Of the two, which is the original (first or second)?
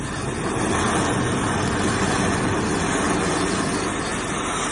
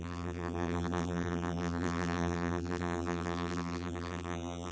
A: first